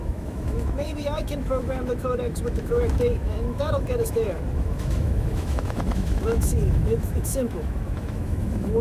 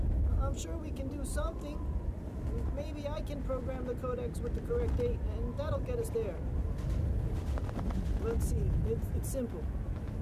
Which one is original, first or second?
second